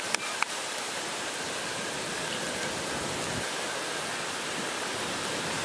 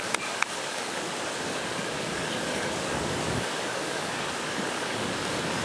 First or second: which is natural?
first